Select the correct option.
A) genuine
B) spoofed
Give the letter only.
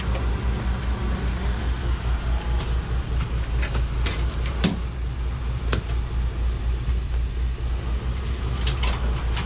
A